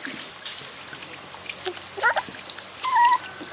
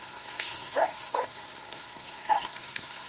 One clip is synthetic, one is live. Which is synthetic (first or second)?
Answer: second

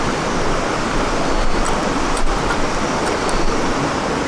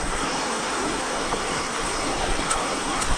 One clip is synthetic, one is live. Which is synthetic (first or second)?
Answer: second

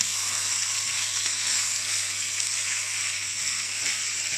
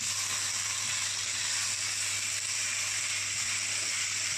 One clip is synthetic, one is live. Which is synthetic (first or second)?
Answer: first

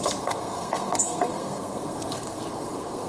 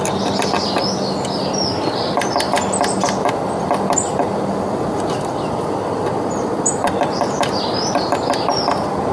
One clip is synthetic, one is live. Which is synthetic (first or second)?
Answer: first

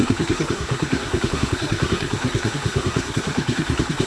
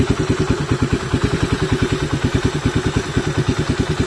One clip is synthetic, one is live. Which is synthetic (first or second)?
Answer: first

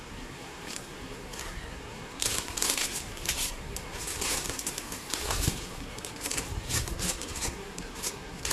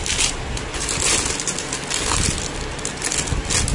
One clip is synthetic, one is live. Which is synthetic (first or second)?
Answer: first